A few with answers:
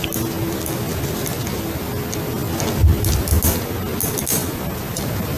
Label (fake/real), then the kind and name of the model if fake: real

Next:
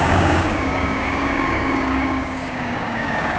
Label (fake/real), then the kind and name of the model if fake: fake, codec, DAC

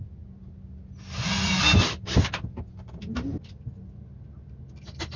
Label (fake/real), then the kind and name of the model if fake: real